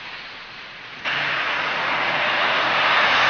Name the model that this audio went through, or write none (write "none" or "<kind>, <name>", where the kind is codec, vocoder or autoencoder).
vocoder, Vocos